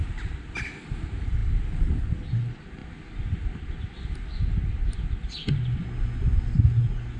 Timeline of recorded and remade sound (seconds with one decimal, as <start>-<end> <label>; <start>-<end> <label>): 0.0-7.2 recorded